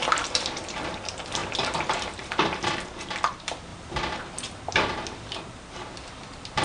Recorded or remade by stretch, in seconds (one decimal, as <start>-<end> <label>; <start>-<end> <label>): 0.0-6.6 remade